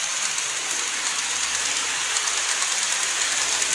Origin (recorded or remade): recorded